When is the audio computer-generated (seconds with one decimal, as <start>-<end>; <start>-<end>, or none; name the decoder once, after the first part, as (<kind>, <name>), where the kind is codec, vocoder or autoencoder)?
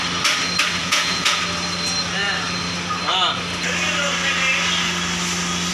0.8-1.4 (vocoder, Vocos)